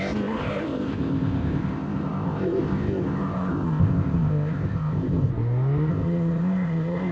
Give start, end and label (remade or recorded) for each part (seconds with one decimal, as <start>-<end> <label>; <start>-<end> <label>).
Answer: 0.0-5.3 remade; 5.3-5.9 recorded; 5.9-7.1 remade